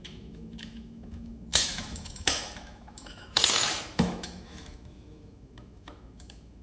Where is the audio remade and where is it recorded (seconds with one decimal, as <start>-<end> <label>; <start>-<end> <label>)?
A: 0.0-6.6 remade